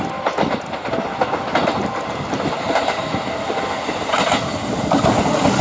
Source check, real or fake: real